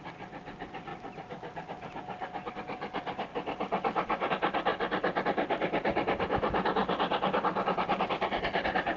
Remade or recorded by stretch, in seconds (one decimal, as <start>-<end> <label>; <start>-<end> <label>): 0.0-0.9 remade; 0.9-2.5 recorded; 2.5-4.7 remade; 4.7-5.2 recorded; 5.2-9.0 remade